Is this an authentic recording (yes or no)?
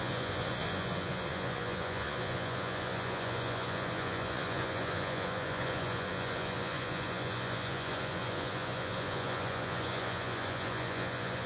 no